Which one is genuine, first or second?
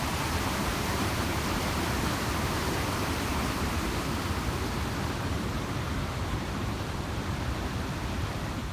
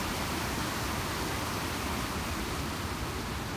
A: second